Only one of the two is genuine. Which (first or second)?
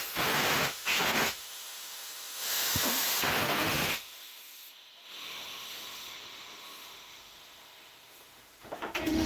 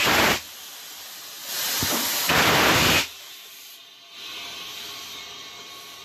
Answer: second